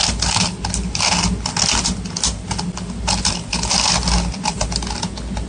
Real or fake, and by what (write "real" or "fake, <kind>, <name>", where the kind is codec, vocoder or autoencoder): real